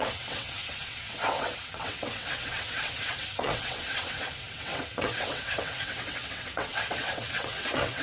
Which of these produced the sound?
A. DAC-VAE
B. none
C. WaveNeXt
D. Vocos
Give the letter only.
C